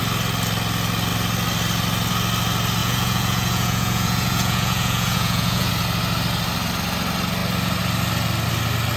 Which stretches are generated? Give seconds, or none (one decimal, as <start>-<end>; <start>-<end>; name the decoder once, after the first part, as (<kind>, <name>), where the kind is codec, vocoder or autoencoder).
2.8-5.7 (vocoder, Vocos)